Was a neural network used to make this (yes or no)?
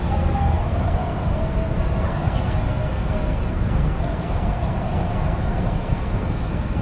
yes